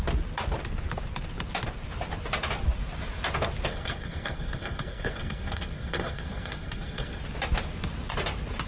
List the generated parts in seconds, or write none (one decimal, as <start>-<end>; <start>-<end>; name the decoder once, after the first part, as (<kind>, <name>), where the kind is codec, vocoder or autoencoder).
3.7-7.2 (codec, SNAC)